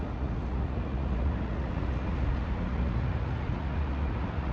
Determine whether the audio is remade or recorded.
remade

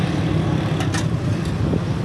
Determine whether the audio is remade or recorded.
recorded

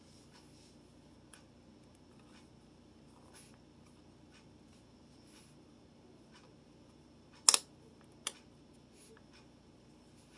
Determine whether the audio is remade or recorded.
recorded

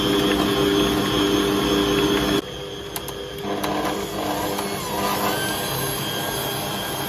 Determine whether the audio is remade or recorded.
recorded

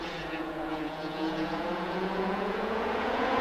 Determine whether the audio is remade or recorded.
remade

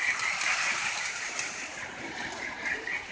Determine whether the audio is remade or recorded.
remade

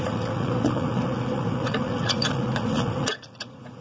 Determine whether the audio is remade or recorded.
remade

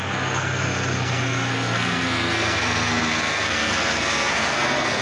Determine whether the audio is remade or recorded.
remade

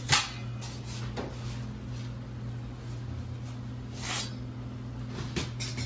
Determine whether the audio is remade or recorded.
recorded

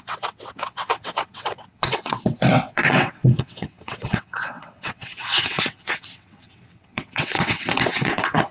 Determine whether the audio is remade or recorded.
remade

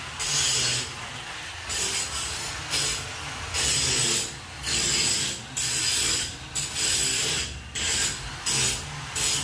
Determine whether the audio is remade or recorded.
recorded